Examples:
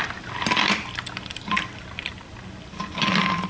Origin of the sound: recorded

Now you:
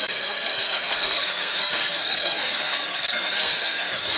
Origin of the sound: remade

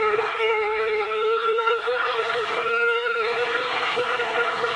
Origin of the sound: remade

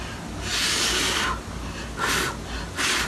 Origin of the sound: recorded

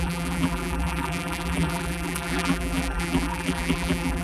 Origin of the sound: remade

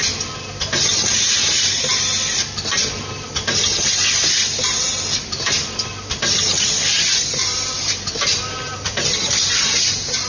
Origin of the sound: recorded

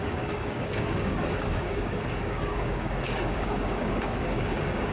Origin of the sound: remade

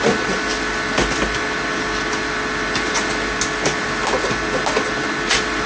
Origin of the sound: recorded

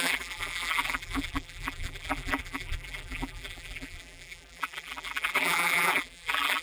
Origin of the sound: remade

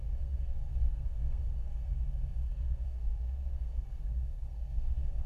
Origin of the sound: remade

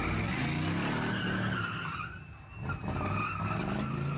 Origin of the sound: recorded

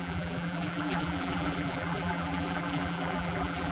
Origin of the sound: remade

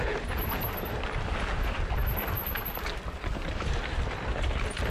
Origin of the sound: recorded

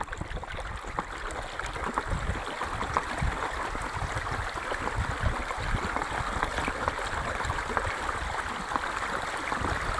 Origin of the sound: recorded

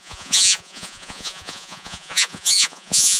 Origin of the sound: remade